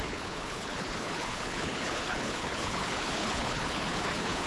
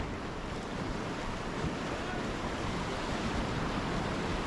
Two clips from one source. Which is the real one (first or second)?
second